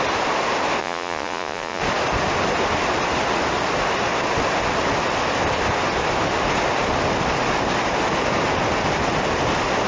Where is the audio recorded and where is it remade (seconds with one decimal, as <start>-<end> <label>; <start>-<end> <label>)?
0.0-0.8 recorded; 0.8-1.8 remade; 1.8-9.9 recorded